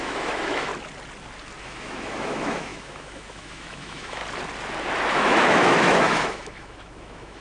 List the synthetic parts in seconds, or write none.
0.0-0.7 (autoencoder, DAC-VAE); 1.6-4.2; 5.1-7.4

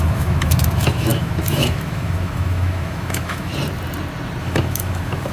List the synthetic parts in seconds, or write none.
0.0-3.5 (autoencoder, DAC-VAE); 4.4-5.3

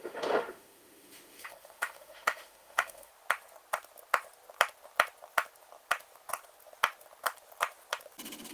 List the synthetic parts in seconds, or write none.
0.0-3.1 (autoencoder, DAC-VAE)

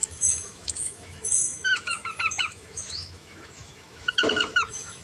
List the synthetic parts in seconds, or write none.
0.0-5.0 (autoencoder, DAC-VAE)

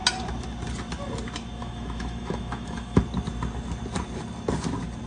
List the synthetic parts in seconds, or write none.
1.6-3.0 (autoencoder, DAC-VAE)

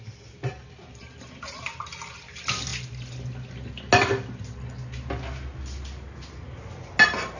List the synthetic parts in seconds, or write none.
none

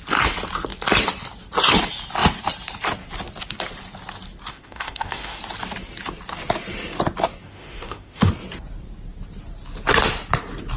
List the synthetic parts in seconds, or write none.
4.5-5.4 (autoencoder, DAC-VAE); 7.5-8.3